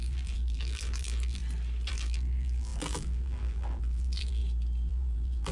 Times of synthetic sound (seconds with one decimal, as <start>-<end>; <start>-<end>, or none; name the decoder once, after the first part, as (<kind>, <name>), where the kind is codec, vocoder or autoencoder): 0.0-1.4 (vocoder, BigVGAN v2); 1.9-4.4; 4.9-5.5